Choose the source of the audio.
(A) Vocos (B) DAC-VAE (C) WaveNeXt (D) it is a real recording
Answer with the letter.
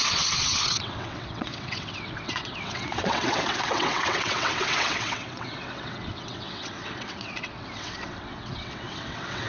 C